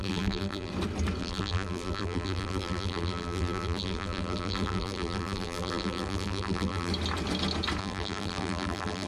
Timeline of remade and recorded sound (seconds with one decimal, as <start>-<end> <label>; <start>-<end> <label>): 0.0-0.7 remade; 0.7-1.2 recorded; 1.2-6.9 remade; 6.9-7.8 recorded; 7.8-9.1 remade